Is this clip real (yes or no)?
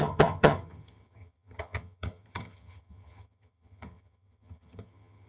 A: no